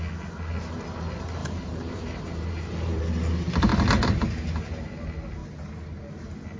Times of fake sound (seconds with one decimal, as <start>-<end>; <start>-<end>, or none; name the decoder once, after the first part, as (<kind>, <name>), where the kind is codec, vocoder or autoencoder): 1.4-3.0 (vocoder, BigVGAN v2)